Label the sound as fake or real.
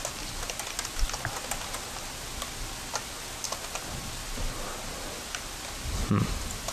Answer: real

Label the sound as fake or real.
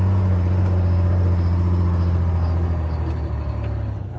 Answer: real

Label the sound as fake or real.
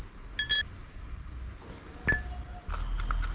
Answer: real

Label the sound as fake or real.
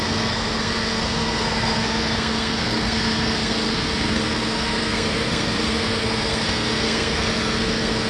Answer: fake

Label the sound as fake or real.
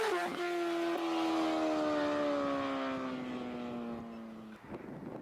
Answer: real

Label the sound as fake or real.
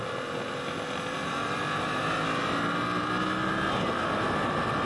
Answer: real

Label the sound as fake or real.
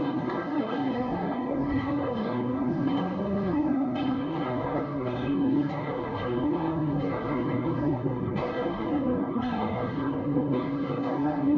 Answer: fake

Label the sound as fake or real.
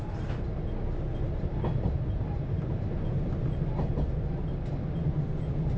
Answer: real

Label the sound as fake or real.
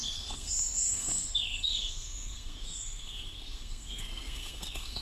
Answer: fake